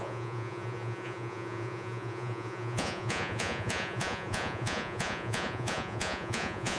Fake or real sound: fake